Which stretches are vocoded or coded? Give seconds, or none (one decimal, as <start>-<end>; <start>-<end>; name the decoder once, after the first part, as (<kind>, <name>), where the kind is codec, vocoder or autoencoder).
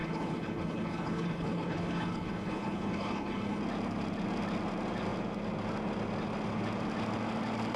0.0-3.6 (codec, HILCodec)